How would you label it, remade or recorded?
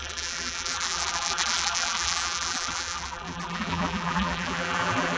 remade